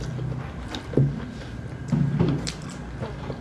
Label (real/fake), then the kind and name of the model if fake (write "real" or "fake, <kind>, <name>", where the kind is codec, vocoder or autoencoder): real